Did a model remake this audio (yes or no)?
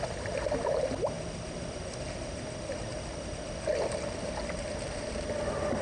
no